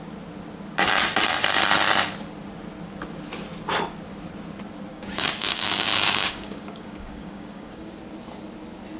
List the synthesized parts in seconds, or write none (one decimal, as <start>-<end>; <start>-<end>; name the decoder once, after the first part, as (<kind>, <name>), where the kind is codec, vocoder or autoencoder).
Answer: 4.9-7.9 (codec, DAC)